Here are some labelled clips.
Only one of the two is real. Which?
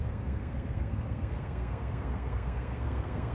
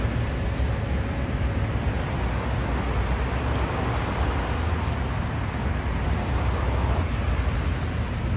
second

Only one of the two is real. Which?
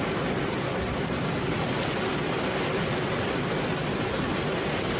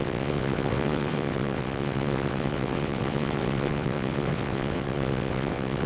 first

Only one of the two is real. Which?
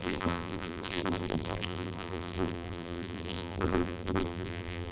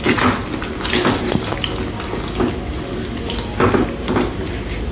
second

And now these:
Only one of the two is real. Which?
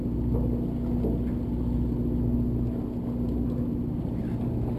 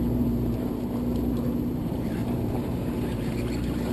first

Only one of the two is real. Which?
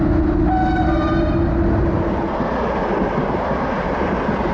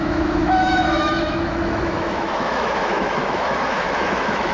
first